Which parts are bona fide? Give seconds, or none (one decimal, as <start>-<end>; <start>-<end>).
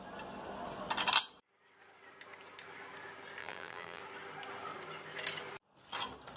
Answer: 0.0-3.4; 4.0-6.4